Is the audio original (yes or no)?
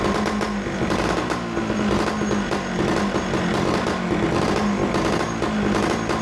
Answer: yes